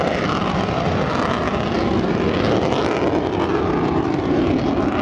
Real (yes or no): no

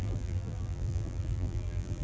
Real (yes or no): no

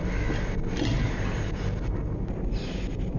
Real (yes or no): yes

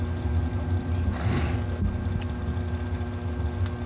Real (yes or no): yes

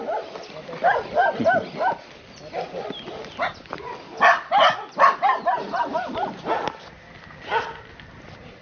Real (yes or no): yes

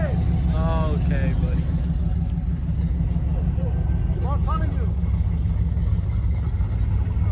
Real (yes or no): yes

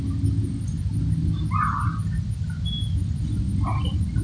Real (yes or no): yes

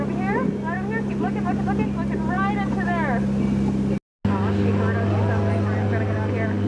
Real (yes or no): yes